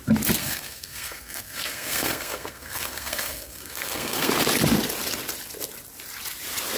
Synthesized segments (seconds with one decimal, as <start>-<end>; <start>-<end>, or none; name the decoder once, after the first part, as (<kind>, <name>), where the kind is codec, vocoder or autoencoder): 0.4-4.3 (codec, SNAC)